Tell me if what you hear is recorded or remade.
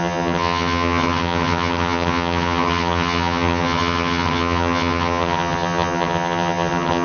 remade